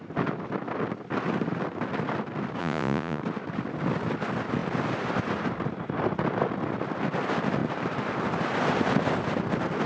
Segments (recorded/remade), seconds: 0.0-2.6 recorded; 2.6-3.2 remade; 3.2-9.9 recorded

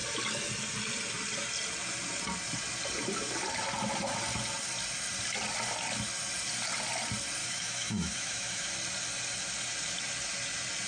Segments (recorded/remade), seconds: 0.0-7.4 recorded; 7.4-8.7 remade; 8.7-10.9 recorded

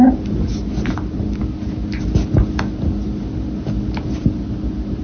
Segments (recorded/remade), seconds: 0.0-5.0 recorded

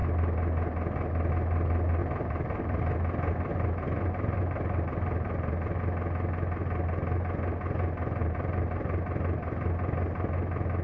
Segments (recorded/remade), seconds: 0.0-2.0 recorded; 2.0-2.8 remade; 2.8-3.5 recorded; 3.5-5.8 remade; 5.8-8.2 recorded; 8.2-9.0 remade; 9.0-10.8 recorded

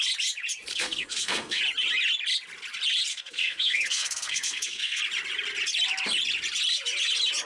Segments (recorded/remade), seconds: 0.0-0.7 recorded; 0.7-1.6 remade; 1.6-3.1 recorded; 3.1-5.0 remade; 5.0-7.5 recorded

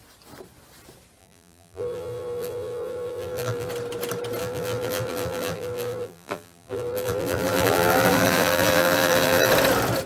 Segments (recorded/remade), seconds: 0.0-1.2 recorded; 1.2-3.7 remade; 3.7-4.4 recorded; 4.4-9.5 remade; 9.5-10.1 recorded

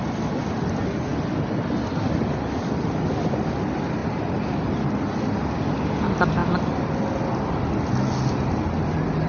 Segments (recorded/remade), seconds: 0.0-1.1 recorded; 1.1-3.5 remade; 3.5-4.0 recorded; 4.0-4.9 remade; 4.9-9.3 recorded

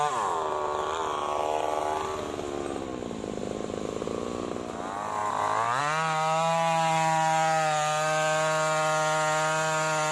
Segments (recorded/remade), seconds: 0.0-10.1 recorded